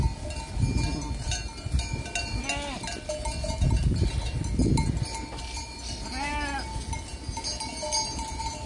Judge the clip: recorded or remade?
recorded